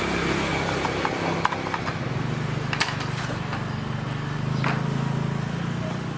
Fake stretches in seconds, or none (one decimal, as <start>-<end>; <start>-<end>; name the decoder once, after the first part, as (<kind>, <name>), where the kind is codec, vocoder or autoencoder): none